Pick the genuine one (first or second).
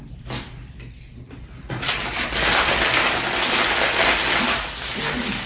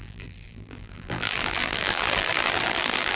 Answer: first